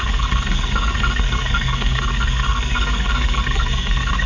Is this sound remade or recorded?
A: remade